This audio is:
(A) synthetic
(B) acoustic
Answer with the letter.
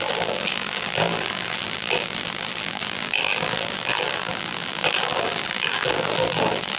A